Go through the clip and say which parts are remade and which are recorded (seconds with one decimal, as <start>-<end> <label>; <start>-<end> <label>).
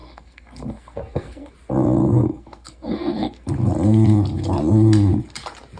0.0-1.5 remade; 1.5-2.0 recorded; 2.0-3.5 remade; 3.5-5.8 recorded